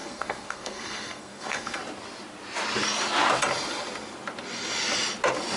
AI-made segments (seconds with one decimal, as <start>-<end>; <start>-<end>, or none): 0.0-1.8